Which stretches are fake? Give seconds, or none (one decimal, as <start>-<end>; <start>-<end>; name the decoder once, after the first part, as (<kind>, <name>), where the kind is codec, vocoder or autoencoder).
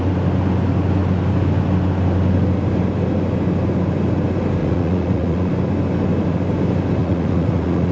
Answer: 4.6-5.5 (vocoder, Vocos); 7.0-7.9